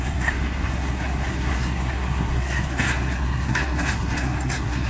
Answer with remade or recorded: remade